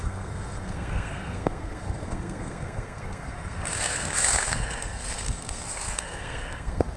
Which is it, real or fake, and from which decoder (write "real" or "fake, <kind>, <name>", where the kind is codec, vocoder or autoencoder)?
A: fake, codec, SNAC